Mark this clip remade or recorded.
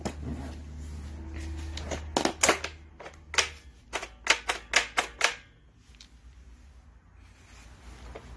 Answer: recorded